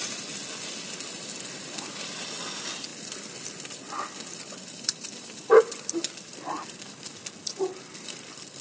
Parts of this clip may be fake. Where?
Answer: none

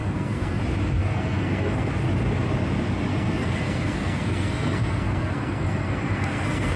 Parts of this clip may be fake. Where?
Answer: 0.0-0.6 (codec, SNAC); 1.0-1.9; 3.1-6.8

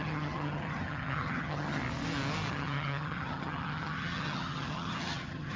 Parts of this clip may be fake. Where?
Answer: 0.0-1.8 (vocoder, HiFi-GAN); 2.5-5.6

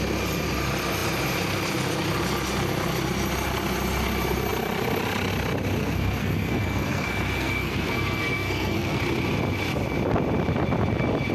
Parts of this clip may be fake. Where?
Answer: 5.8-9.0 (codec, SNAC)

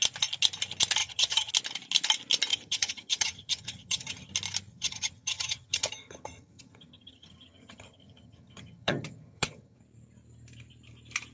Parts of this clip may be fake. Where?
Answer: 1.0-1.5 (vocoder, HiFi-GAN); 2.5-4.3; 4.7-9.8

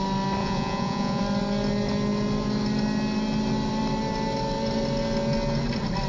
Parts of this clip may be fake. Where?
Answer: 0.4-1.2 (vocoder, Vocos)

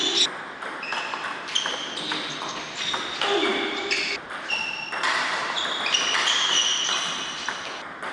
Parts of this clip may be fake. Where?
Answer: 3.5-5.3 (vocoder, BigVGAN v2)

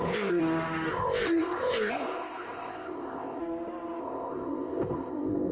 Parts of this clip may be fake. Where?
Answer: 0.0-0.4 (codec, ZipCodec); 0.9-3.4; 4.0-5.5